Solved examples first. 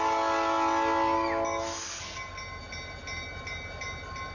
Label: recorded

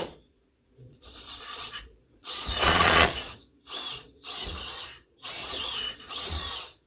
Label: remade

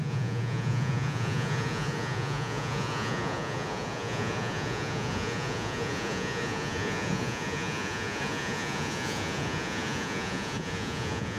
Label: remade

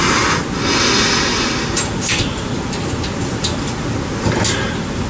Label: recorded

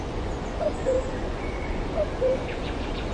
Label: remade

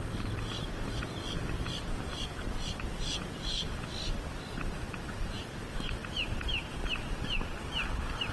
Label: recorded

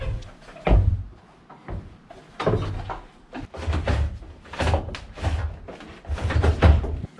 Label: recorded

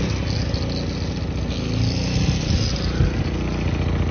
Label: recorded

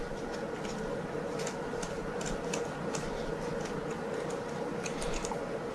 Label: recorded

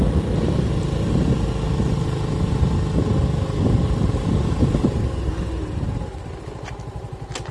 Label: recorded